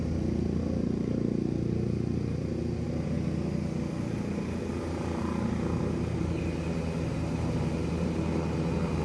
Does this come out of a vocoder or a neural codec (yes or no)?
no